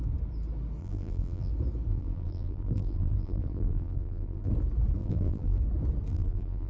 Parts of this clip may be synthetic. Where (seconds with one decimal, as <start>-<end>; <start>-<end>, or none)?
0.8-1.5; 1.9-4.5; 5.0-5.6; 6.1-6.7